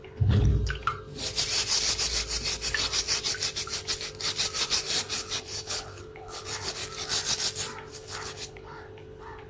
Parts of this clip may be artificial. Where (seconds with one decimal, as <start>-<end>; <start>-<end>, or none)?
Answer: 0.0-0.5; 5.4-6.8; 7.9-9.5